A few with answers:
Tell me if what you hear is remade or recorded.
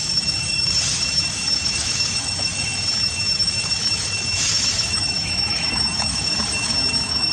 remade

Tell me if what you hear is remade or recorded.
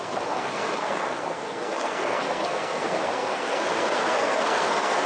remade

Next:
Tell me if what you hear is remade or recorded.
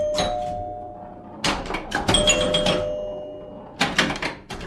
recorded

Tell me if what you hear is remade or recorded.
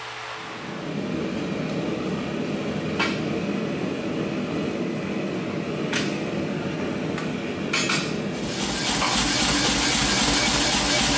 recorded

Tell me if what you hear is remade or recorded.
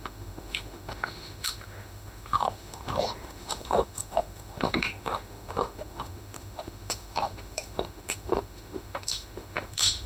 remade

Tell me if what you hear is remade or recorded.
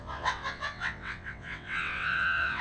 remade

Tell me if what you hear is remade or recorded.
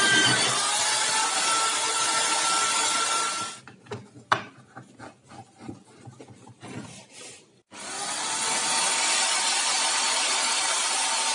recorded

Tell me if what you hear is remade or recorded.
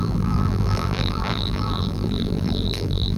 remade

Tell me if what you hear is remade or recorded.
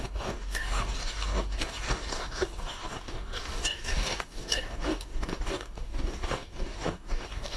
remade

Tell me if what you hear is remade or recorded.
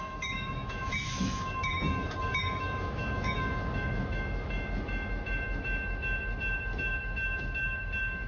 remade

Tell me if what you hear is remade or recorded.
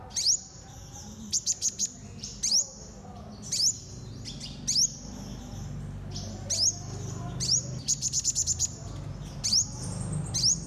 recorded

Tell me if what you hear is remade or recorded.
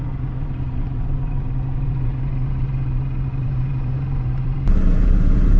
remade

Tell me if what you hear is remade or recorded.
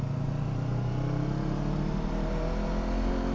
recorded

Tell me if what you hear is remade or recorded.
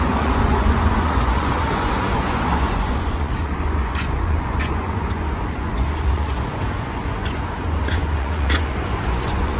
remade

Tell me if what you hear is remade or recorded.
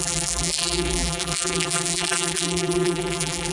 remade